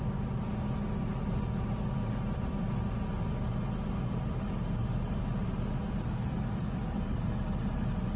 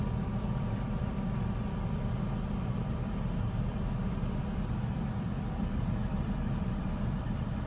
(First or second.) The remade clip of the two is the second